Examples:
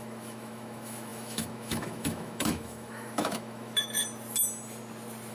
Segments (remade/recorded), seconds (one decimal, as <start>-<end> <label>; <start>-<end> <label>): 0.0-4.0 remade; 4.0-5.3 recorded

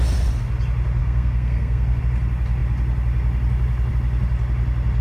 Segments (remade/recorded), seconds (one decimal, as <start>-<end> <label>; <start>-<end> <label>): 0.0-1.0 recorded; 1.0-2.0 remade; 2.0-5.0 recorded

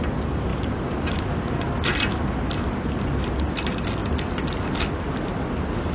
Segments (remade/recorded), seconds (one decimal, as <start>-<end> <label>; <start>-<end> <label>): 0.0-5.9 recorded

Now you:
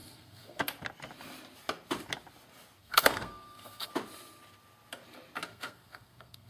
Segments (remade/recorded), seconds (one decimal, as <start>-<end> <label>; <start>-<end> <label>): 0.0-0.6 remade; 0.6-2.8 recorded; 2.8-3.9 remade; 3.9-5.5 recorded; 5.5-6.5 remade

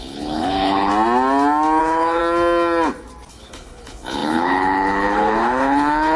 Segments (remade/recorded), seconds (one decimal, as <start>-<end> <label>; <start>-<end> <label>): 0.0-0.9 remade; 0.9-1.8 recorded; 1.8-2.2 remade; 2.2-3.3 recorded; 3.3-6.2 remade